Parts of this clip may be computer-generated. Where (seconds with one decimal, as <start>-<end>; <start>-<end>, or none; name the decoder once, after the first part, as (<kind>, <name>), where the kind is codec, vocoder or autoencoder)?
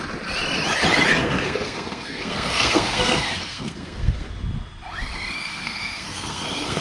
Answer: 1.2-4.3 (codec, SNAC); 5.4-6.8